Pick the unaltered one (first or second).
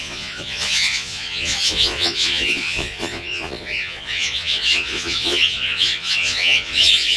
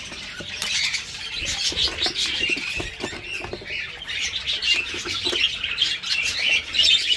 second